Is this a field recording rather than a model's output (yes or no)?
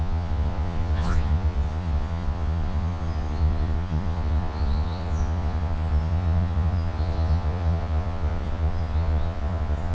no